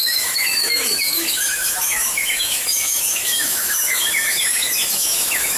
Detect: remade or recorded remade